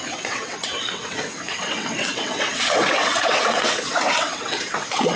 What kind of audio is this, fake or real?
fake